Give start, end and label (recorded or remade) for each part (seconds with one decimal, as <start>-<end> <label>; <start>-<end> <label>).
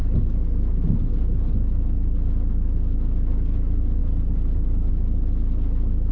0.0-4.0 recorded; 4.0-4.9 remade; 4.9-6.1 recorded